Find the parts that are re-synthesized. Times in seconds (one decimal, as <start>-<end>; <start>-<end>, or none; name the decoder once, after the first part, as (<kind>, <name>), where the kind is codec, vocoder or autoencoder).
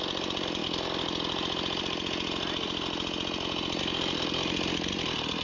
none